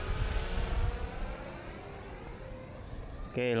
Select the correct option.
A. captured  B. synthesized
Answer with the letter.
A